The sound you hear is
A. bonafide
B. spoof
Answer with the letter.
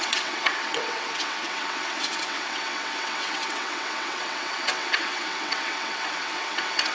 B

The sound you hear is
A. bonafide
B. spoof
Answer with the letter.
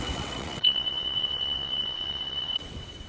B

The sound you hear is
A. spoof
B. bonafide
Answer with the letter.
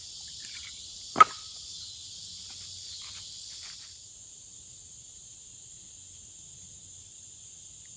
B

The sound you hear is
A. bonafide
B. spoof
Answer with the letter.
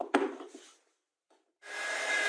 A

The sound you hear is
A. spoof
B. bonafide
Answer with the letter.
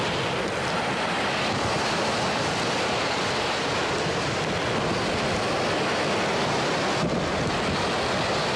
B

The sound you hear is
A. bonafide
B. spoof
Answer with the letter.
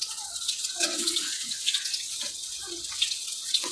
B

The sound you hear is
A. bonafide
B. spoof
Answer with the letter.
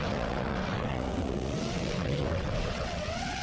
B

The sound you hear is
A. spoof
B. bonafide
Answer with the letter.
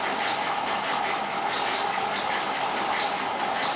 B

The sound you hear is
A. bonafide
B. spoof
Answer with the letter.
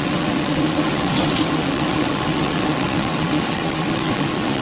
B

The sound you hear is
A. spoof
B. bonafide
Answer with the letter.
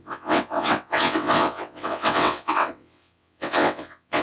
A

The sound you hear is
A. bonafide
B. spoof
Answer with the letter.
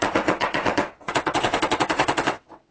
B